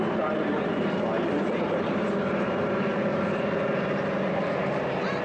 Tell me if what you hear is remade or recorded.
remade